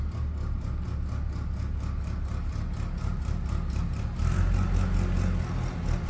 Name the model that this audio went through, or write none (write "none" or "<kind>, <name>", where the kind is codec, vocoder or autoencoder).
none